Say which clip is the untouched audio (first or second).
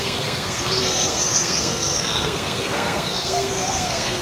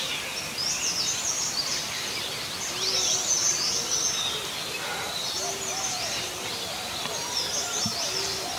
second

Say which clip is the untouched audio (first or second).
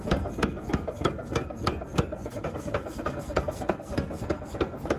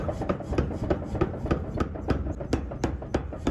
second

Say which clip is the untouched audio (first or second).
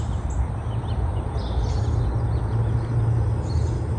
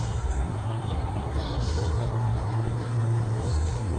first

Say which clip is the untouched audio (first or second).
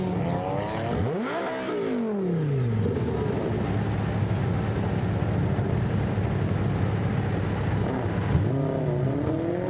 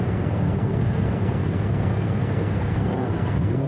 first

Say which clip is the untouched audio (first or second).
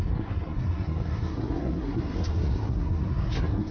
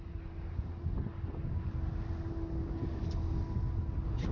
second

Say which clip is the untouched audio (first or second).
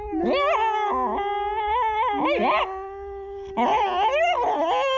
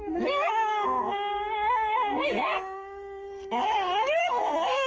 first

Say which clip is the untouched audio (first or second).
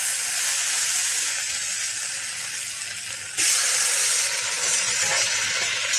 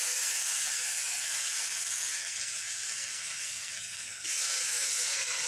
first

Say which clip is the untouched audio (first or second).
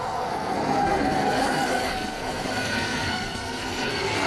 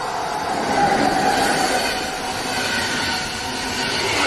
second